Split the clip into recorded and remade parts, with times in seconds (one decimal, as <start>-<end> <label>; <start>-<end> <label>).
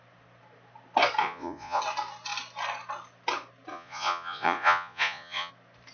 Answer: 0.0-1.2 recorded; 1.2-1.8 remade; 1.8-3.7 recorded; 3.7-5.5 remade; 5.5-5.9 recorded